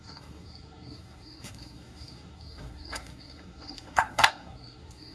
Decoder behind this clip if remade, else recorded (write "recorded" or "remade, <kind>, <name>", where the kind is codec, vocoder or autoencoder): remade, codec, SNAC